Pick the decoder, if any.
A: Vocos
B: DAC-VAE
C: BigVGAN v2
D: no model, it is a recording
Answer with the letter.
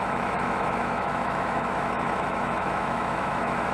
B